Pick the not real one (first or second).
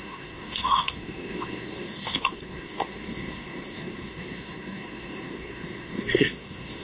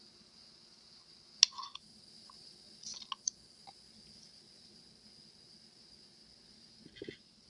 first